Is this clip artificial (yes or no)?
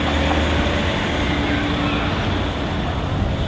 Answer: no